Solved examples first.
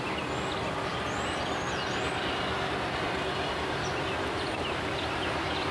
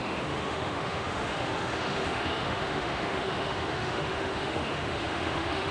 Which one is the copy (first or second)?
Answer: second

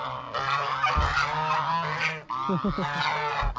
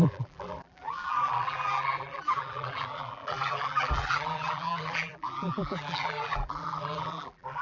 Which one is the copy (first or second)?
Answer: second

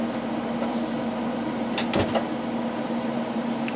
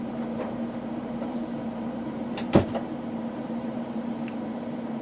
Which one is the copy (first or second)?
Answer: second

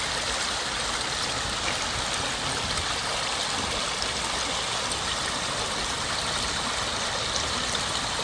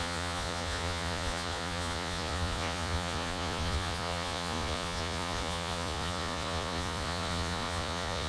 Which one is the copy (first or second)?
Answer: second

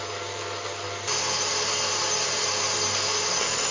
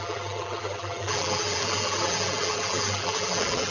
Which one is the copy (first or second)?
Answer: second